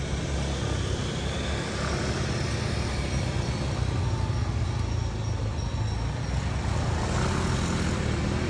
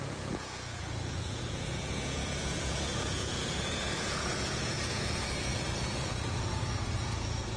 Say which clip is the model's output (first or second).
second